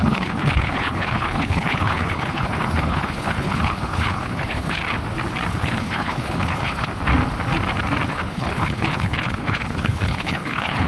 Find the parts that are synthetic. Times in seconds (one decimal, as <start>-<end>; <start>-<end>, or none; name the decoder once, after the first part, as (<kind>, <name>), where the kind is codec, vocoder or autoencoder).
0.0-4.8 (codec, HILCodec); 5.5-6.9; 8.1-10.9